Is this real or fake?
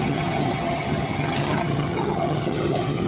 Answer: fake